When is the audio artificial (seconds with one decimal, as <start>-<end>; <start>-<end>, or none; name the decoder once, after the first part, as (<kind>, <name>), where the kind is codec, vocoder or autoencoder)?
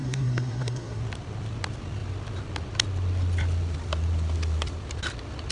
0.0-1.0 (codec, SNAC)